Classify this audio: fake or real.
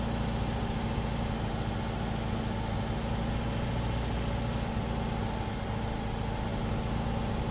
real